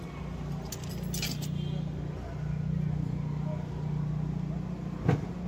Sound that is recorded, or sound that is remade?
recorded